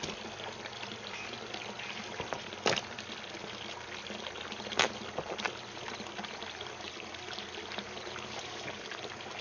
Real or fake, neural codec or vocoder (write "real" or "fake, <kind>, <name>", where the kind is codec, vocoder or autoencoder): real